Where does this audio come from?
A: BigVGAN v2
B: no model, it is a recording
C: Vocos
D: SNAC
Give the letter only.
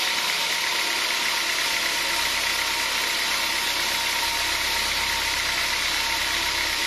B